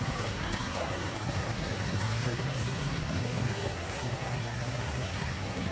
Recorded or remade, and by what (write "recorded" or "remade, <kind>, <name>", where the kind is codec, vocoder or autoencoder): remade, codec, SNAC